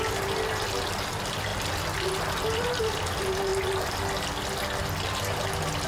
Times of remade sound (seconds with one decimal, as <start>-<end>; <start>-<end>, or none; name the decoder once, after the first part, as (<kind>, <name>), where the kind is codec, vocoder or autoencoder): none